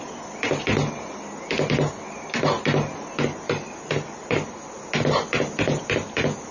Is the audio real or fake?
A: real